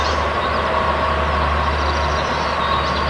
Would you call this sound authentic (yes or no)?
yes